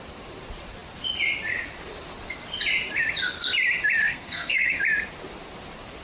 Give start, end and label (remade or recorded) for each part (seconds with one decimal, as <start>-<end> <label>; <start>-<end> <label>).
0.0-4.0 recorded; 4.0-4.8 remade; 4.8-6.0 recorded